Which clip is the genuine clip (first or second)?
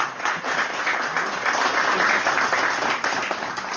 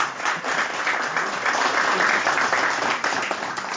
first